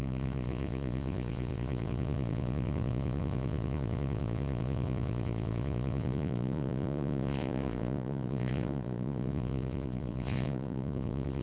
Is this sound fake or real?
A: fake